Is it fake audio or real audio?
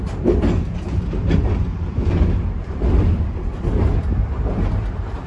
fake